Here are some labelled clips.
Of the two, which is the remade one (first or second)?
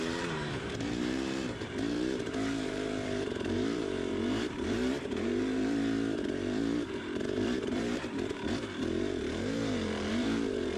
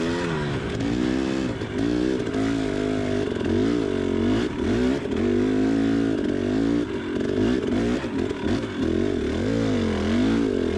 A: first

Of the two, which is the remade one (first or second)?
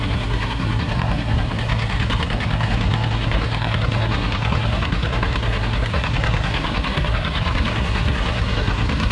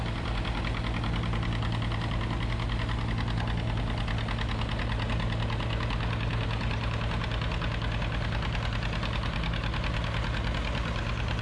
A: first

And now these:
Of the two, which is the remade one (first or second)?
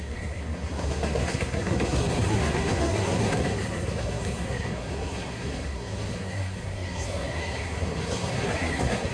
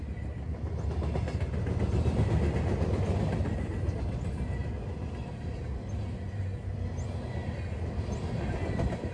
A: first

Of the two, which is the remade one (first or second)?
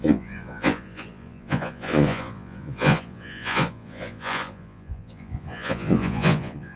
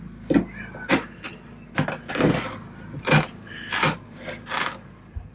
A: first